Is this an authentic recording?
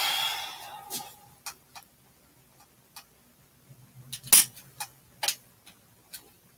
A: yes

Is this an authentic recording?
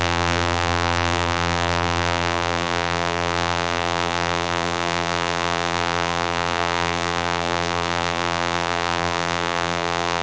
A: no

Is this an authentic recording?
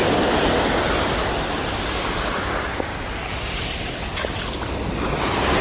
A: yes